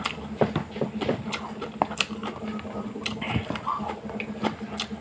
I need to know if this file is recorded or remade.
recorded